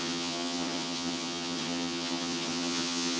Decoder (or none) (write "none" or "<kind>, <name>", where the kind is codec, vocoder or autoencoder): vocoder, HiFi-GAN